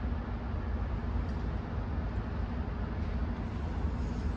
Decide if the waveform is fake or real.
real